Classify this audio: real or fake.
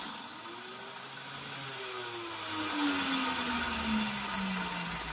real